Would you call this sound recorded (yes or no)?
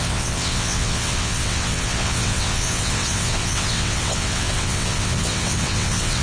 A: no